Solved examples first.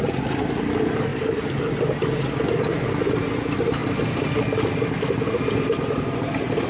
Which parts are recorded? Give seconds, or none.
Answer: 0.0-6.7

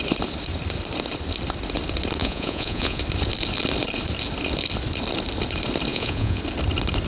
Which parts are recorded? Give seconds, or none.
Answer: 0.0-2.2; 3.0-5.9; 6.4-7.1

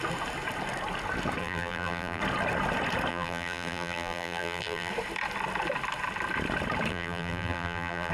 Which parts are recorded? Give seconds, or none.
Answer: 0.0-1.4; 2.2-3.1; 4.9-6.9